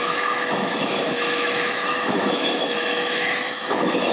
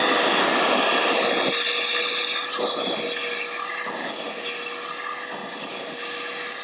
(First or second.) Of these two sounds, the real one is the second